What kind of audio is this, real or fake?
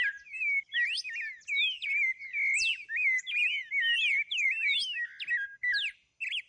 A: real